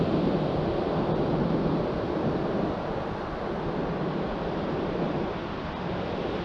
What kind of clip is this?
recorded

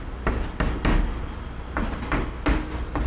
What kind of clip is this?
recorded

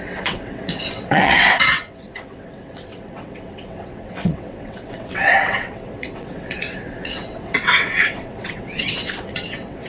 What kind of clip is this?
remade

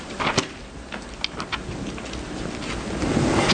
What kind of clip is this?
recorded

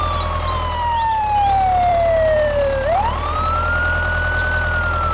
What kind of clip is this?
remade